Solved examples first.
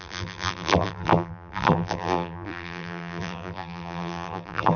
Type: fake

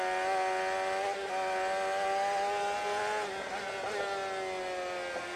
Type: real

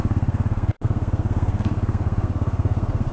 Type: fake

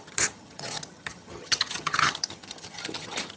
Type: fake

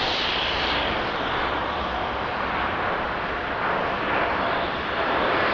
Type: fake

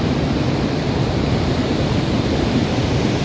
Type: fake